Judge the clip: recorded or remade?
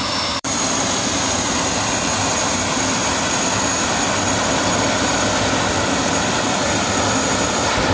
remade